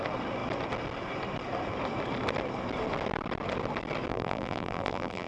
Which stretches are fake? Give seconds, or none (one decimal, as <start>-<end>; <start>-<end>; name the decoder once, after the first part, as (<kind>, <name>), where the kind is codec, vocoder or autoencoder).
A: 4.1-5.3 (vocoder, BigVGAN v2)